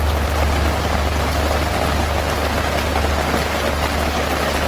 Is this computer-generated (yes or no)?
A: no